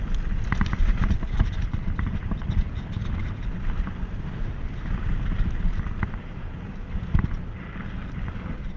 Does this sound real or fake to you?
real